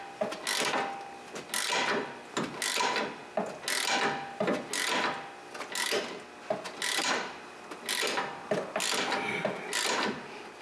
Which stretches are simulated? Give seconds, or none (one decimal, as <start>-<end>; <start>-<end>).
none